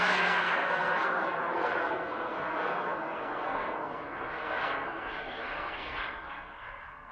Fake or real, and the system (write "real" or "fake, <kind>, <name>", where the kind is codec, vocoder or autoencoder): fake, codec, SNAC